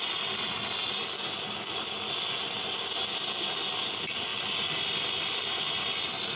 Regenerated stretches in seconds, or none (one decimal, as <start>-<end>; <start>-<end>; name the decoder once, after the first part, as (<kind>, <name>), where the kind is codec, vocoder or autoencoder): none